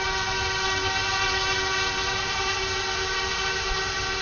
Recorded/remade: recorded